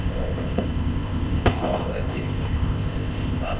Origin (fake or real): fake